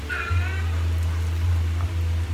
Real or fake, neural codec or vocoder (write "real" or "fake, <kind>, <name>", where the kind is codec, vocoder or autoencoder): real